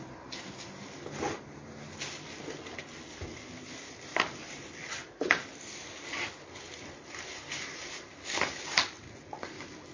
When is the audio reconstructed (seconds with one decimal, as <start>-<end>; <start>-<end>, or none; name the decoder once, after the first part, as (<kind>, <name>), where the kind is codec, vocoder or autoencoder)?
none